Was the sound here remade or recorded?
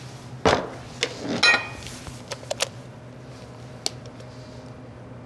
recorded